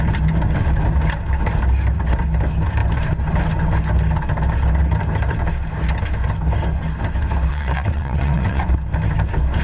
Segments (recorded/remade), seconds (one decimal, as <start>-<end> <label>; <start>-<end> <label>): 0.0-7.5 recorded; 7.5-8.6 remade; 8.6-9.6 recorded